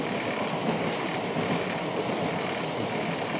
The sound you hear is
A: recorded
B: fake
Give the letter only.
A